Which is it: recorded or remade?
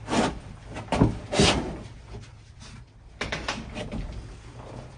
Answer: recorded